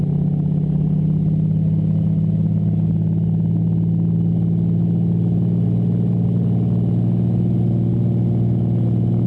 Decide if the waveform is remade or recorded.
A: recorded